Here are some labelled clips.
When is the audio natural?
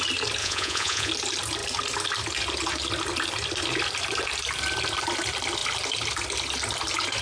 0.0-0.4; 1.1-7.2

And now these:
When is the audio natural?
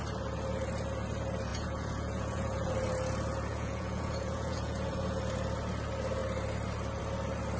0.0-1.5; 2.7-3.5; 5.2-7.6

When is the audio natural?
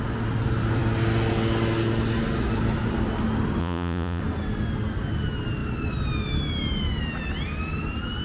0.0-3.6; 4.2-8.2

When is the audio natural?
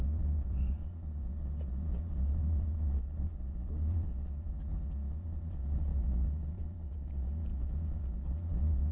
4.5-5.1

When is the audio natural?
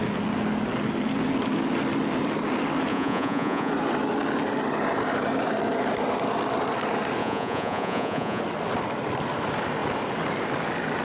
0.0-2.9; 3.7-7.2; 8.4-11.0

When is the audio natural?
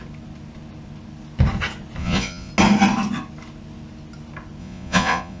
0.0-2.0; 2.5-4.6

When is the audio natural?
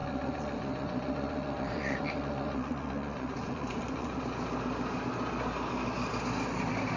4.2-7.0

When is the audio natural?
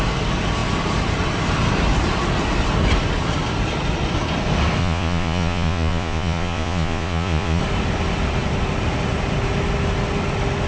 0.0-4.8; 7.6-10.7